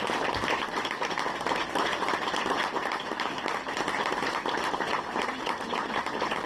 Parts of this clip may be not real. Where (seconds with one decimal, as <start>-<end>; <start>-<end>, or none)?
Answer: 1.9-5.4

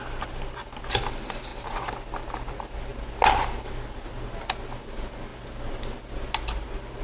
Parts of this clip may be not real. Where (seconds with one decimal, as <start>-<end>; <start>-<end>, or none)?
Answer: none

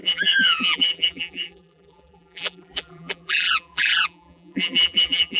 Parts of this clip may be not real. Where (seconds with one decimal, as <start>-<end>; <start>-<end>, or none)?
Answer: 0.0-5.4

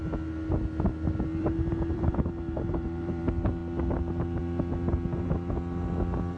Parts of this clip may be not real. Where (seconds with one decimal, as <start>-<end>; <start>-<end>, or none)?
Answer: 1.4-3.2

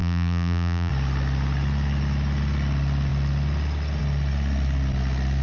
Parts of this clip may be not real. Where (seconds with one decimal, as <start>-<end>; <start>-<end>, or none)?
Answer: 0.0-0.9

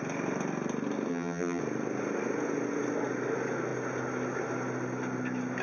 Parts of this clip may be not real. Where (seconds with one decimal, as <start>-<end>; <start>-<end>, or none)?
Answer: 1.1-1.6

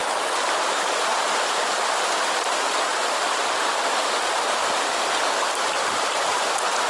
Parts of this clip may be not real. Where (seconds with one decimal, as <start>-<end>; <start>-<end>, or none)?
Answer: 1.1-4.1